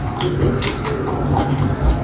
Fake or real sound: real